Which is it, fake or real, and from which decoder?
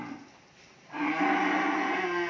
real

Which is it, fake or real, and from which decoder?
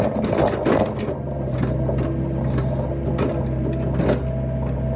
real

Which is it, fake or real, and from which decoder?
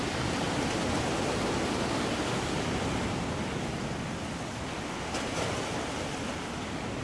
real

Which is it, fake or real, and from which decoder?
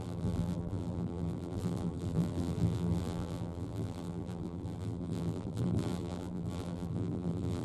fake, vocoder, BigVGAN v2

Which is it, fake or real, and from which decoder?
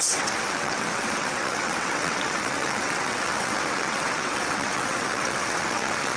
fake, vocoder, WaveNeXt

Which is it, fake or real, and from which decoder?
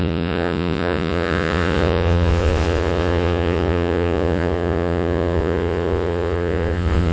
fake, vocoder, Vocos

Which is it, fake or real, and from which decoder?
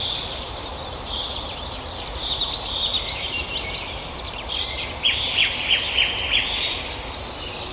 real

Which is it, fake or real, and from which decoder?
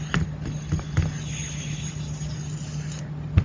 real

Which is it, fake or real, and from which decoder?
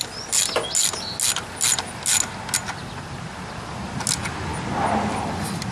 real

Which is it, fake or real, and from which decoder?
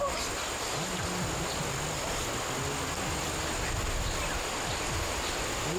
real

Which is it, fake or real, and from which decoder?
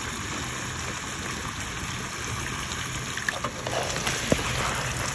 real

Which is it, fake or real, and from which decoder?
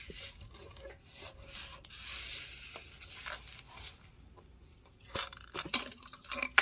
real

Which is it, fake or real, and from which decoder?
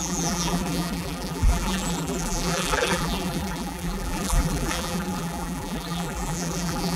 fake, vocoder, BigVGAN v2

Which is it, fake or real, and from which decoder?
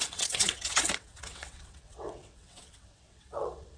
fake, vocoder, WaveNeXt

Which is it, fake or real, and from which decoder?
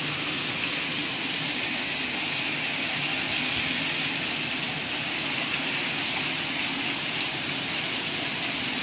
real